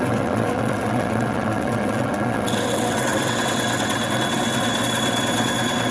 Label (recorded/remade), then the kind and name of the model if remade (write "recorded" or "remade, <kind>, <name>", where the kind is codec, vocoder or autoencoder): remade, vocoder, WaveNeXt